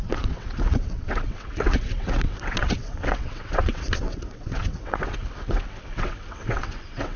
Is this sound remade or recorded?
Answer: remade